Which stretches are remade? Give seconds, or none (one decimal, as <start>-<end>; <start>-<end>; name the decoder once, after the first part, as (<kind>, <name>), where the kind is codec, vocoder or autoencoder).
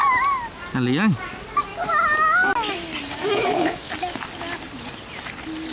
3.2-3.9 (autoencoder, DAC-VAE)